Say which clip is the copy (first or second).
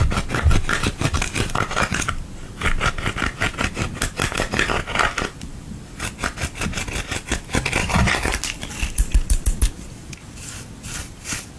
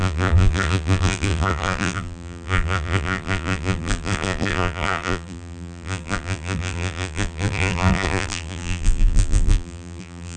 second